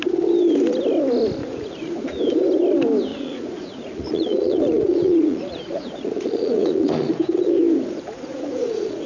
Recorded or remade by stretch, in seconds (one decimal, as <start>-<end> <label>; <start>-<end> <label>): 0.0-1.4 recorded; 1.4-2.2 remade; 2.2-3.1 recorded; 3.1-7.5 remade; 7.5-8.3 recorded; 8.3-9.1 remade